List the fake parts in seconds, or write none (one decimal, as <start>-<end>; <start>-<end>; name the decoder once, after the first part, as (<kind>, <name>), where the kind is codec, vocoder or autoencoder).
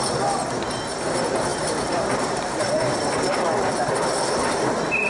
1.5-3.7 (vocoder, BigVGAN v2)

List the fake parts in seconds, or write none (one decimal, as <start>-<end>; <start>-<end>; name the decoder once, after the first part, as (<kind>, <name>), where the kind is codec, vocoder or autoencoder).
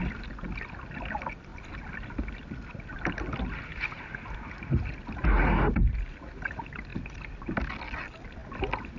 6.9-7.6 (vocoder, BigVGAN v2)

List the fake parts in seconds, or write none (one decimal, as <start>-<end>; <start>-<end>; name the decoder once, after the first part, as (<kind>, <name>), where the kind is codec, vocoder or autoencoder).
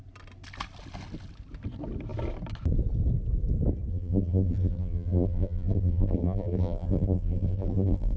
3.9-8.2 (vocoder, BigVGAN v2)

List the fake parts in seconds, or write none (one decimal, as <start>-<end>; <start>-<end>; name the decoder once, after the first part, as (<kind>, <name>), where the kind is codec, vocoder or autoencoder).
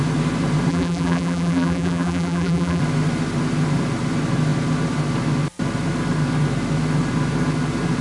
0.7-2.8 (vocoder, BigVGAN v2)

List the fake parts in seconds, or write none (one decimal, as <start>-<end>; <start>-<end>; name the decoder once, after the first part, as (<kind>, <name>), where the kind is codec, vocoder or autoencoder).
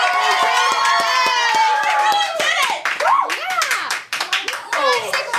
1.6-2.5 (vocoder, BigVGAN v2); 3.8-4.7